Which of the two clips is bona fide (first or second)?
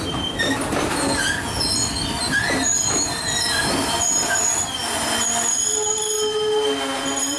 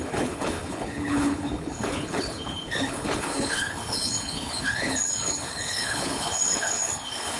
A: first